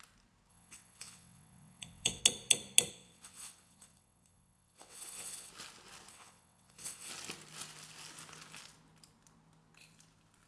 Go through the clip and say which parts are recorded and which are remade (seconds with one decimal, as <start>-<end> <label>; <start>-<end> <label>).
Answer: 0.0-0.5 recorded; 0.5-2.2 remade; 2.2-2.9 recorded; 2.9-5.5 remade; 5.5-6.1 recorded; 6.1-7.1 remade; 7.1-10.5 recorded